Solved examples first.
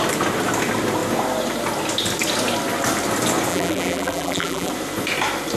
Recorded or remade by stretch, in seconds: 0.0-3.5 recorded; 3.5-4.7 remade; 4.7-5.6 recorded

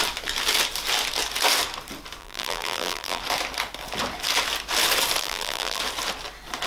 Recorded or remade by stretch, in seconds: 0.0-2.2 recorded; 2.2-3.2 remade; 3.2-5.2 recorded; 5.2-5.8 remade; 5.8-6.7 recorded